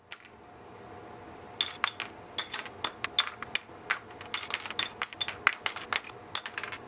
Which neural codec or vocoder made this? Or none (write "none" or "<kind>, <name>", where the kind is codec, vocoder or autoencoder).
none